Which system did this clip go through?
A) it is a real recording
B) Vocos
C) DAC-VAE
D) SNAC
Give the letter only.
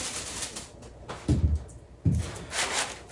A